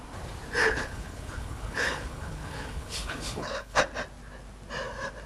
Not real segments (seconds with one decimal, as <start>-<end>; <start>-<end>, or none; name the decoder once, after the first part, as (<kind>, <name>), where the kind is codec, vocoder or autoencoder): 0.6-3.8 (codec, HILCodec)